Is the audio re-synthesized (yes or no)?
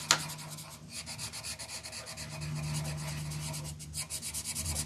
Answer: no